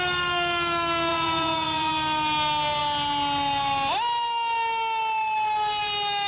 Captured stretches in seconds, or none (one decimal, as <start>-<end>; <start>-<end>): 0.0-1.1; 1.9-6.3